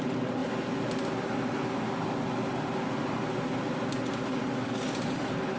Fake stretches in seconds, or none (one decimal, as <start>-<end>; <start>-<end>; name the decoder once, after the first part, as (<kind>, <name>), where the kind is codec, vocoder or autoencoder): 4.2-5.6 (codec, DAC)